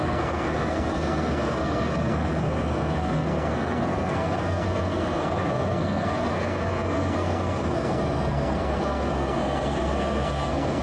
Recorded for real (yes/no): no